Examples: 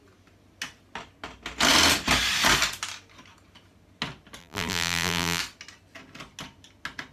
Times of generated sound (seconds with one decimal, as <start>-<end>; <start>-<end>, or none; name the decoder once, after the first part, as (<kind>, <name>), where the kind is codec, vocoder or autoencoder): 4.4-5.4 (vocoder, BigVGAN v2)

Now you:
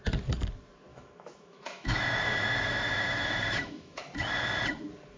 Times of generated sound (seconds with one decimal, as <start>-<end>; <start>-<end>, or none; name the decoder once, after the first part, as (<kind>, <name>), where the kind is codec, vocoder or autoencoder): 0.9-4.0 (autoencoder, DAC-VAE)

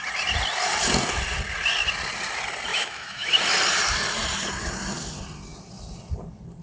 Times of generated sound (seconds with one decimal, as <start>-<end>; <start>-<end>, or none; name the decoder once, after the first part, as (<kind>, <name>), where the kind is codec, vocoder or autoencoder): 2.7-3.3 (autoencoder, DAC-VAE)

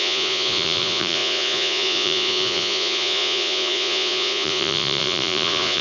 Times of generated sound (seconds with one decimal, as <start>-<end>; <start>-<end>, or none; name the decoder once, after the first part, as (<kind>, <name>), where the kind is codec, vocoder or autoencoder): 0.0-5.8 (vocoder, Vocos)

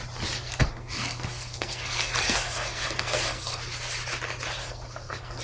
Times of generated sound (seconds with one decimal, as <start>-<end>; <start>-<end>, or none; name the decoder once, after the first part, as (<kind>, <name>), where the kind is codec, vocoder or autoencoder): 0.4-3.6 (codec, SNAC); 4.6-5.4